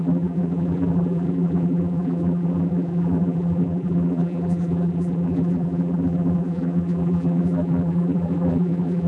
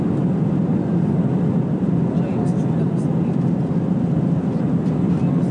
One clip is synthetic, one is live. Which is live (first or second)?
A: second